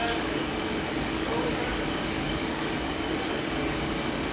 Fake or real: fake